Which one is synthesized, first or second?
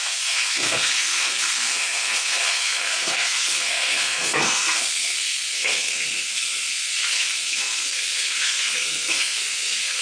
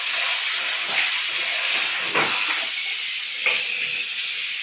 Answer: first